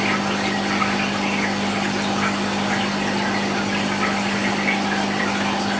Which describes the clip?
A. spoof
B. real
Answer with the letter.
B